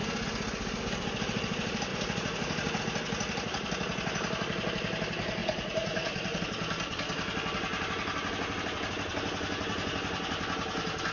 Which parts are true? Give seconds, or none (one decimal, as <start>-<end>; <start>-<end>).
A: 0.0-1.9; 2.8-5.4; 6.4-11.1